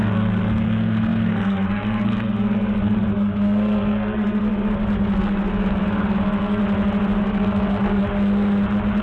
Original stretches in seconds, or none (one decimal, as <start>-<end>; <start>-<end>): 6.6-7.2; 8.0-9.0